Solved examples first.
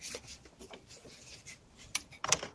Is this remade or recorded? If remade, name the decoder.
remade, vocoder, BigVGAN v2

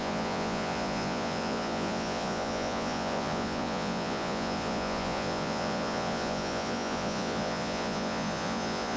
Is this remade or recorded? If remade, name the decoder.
remade, vocoder, Vocos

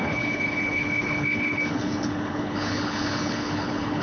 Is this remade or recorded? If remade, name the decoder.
remade, codec, HILCodec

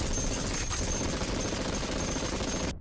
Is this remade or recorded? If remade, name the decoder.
recorded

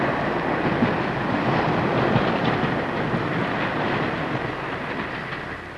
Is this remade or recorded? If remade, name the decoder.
recorded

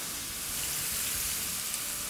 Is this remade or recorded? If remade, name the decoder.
recorded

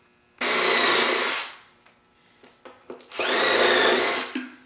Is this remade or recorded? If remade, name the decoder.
recorded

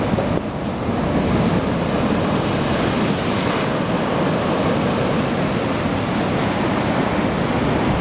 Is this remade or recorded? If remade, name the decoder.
recorded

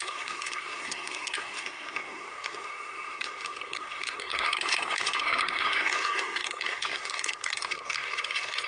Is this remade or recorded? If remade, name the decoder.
remade, codec, SNAC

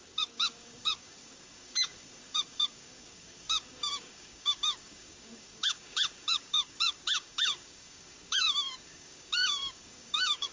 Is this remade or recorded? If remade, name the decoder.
remade, codec, DAC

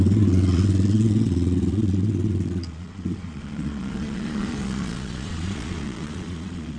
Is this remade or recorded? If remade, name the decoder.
remade, vocoder, Vocos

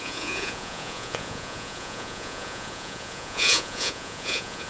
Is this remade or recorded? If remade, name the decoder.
remade, vocoder, Vocos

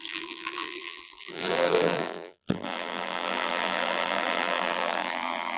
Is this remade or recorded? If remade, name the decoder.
remade, vocoder, BigVGAN v2